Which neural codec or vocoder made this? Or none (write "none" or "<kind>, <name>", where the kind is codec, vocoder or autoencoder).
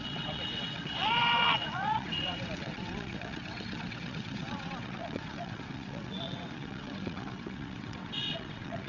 vocoder, WaveNeXt